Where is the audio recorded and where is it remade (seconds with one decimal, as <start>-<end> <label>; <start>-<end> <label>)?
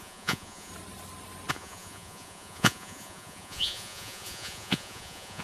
0.0-0.7 remade; 0.7-1.5 recorded; 1.5-5.4 remade